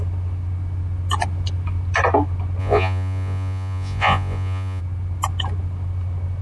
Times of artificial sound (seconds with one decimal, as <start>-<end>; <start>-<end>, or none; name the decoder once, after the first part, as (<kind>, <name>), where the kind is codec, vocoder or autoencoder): 2.6-4.8 (vocoder, Vocos)